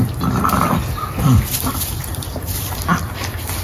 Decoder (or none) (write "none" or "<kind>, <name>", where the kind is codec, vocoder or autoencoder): none